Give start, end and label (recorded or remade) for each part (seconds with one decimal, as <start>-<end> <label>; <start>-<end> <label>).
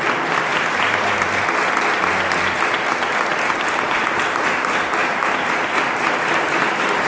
0.0-5.0 recorded; 5.0-5.5 remade; 5.5-7.1 recorded